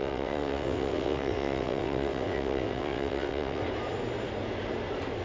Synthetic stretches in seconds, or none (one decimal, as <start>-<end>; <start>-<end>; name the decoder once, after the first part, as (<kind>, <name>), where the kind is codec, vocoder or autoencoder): 0.0-3.6 (vocoder, WaveNeXt)